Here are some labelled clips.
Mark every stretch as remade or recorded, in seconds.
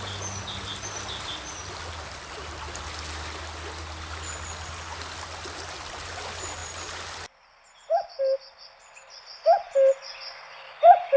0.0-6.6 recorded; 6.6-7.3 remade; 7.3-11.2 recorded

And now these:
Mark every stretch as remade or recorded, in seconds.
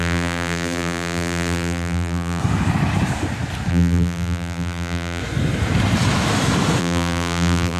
0.0-2.4 remade; 2.4-3.7 recorded; 3.7-5.2 remade; 5.2-6.8 recorded; 6.8-7.8 remade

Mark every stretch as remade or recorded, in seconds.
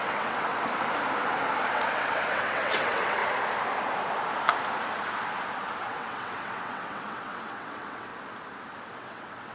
0.0-0.5 remade; 0.5-1.7 recorded; 1.7-3.2 remade; 3.2-5.8 recorded; 5.8-8.1 remade; 8.1-8.9 recorded; 8.9-9.5 remade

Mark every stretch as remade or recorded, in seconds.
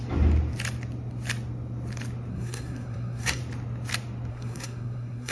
0.0-2.3 recorded; 2.3-3.4 remade; 3.4-4.3 recorded; 4.3-5.3 remade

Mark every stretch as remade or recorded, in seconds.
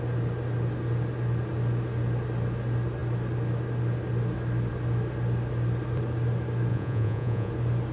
0.0-6.7 recorded; 6.7-7.5 remade; 7.5-7.9 recorded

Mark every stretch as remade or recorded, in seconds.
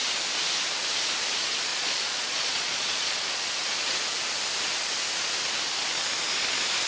0.0-1.7 recorded; 1.7-3.4 remade; 3.4-6.9 recorded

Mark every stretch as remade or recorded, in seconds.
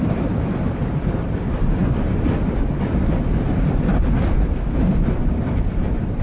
0.0-1.8 remade; 1.8-2.4 recorded; 2.4-6.2 remade